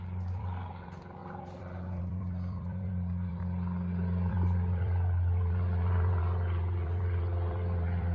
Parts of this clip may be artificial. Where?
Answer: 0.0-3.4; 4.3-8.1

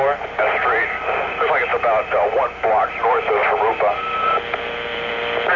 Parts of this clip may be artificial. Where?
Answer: none

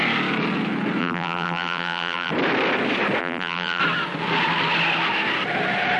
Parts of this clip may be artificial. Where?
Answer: 1.0-2.3; 3.2-3.8

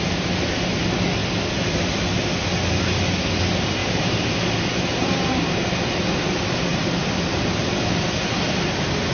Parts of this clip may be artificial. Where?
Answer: 3.8-5.6

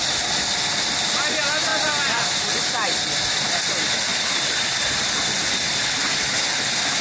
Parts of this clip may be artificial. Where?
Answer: 1.7-3.6; 4.1-5.5